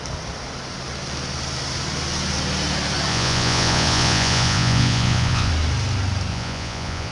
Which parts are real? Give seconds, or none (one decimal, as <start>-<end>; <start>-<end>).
0.0-3.1; 5.5-6.3